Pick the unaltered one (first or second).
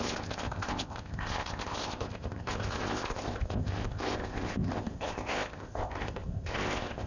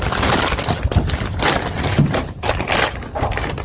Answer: second